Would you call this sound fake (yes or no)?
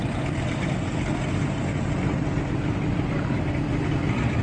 no